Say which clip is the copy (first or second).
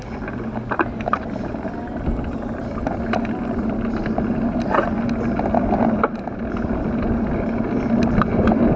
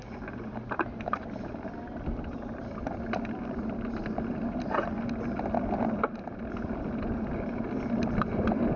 second